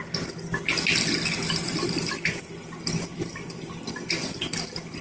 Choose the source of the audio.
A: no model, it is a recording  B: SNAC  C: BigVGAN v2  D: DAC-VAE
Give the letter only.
A